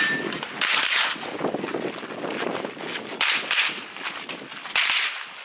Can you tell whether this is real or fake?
real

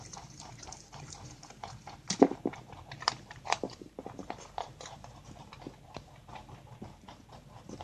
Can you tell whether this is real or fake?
fake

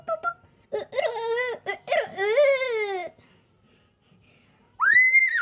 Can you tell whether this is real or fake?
real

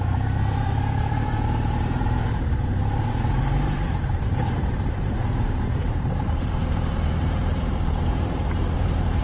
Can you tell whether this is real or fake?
fake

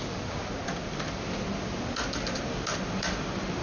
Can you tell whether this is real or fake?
real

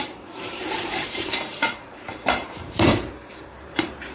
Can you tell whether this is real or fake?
fake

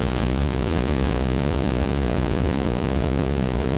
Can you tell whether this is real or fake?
fake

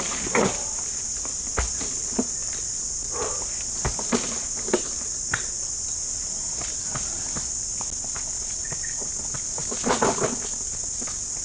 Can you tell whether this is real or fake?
real